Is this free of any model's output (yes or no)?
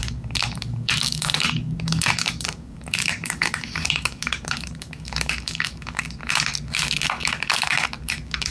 no